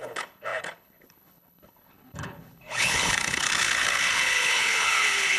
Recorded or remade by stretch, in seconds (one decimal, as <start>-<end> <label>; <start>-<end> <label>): 0.0-5.4 remade